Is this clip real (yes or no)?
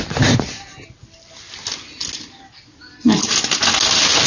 yes